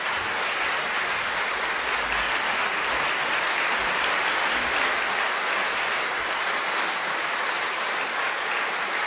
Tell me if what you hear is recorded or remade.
recorded